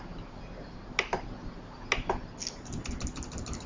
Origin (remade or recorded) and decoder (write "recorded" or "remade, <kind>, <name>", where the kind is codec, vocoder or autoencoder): recorded